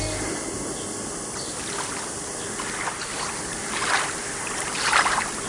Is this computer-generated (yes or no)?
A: no